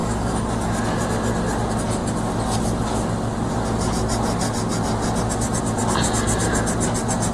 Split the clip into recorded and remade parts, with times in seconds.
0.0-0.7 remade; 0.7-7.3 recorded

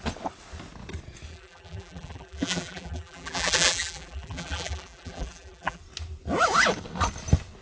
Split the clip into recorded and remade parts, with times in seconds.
0.0-1.3 recorded; 1.3-5.8 remade; 5.8-7.6 recorded